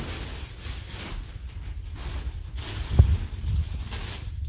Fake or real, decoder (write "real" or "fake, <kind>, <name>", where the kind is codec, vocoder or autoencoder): real